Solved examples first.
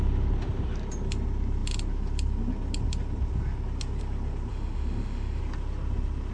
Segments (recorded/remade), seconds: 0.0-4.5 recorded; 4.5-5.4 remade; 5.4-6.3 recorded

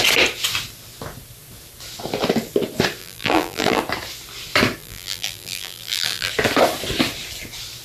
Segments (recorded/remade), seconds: 0.0-3.0 recorded; 3.0-3.8 remade; 3.8-4.8 recorded; 4.8-6.3 remade; 6.3-7.8 recorded